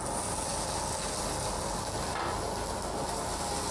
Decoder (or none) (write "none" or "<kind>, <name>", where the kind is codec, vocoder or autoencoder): none